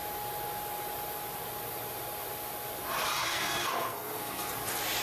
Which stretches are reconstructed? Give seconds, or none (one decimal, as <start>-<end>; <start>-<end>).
3.2-4.5